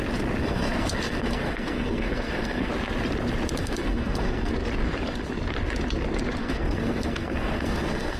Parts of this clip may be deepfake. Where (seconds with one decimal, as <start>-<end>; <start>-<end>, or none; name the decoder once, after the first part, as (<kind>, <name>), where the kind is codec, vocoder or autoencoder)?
0.4-2.7 (codec, SNAC); 3.6-4.5; 6.4-8.2